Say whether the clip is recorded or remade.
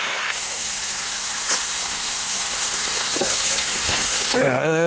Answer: remade